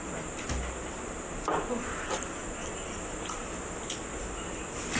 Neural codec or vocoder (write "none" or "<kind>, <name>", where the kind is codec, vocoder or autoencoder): none